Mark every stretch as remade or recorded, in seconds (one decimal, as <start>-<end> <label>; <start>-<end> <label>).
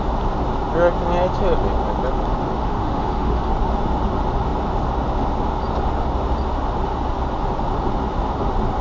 0.0-2.6 recorded; 2.6-3.5 remade; 3.5-8.8 recorded